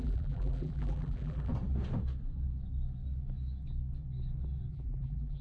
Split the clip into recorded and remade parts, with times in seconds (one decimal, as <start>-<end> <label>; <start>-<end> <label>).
0.0-1.5 remade; 1.5-4.7 recorded; 4.7-5.4 remade